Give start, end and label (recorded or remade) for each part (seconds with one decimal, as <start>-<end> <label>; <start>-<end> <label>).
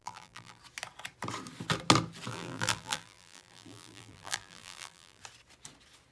0.0-0.6 remade; 0.6-2.3 recorded; 2.3-5.2 remade; 5.2-6.1 recorded